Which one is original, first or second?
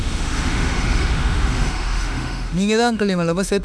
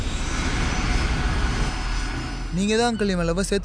second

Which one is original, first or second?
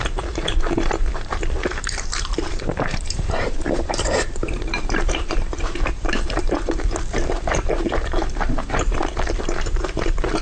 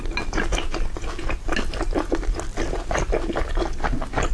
second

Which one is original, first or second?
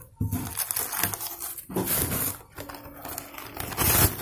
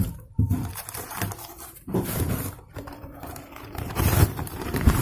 first